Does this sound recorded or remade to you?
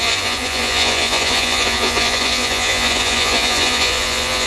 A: remade